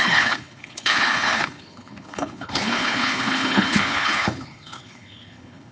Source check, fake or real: fake